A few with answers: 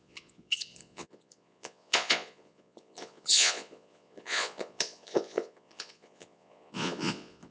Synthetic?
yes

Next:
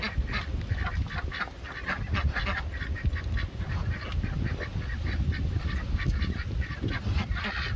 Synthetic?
no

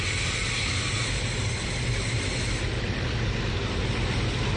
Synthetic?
no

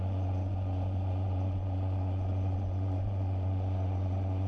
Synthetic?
yes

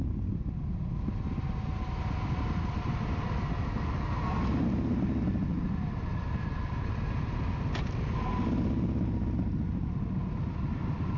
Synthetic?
no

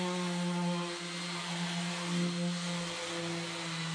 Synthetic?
no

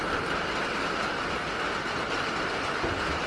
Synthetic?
no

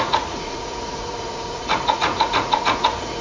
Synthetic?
yes